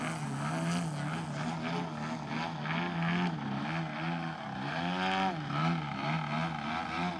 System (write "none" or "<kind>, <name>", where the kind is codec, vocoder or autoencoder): none